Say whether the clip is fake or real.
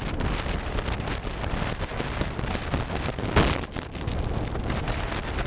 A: real